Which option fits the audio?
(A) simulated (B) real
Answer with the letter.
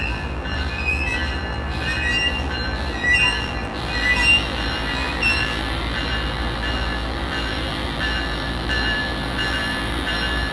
A